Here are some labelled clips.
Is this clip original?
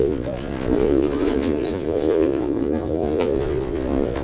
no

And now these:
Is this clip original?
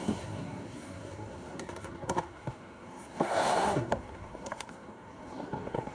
no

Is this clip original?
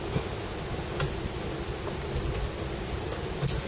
yes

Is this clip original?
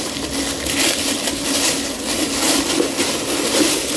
yes